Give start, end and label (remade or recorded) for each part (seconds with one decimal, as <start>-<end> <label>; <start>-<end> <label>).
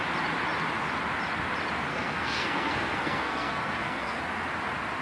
0.0-1.9 recorded; 1.9-4.2 remade; 4.2-5.0 recorded